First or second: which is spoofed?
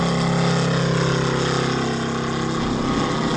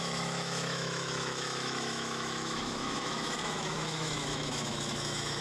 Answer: second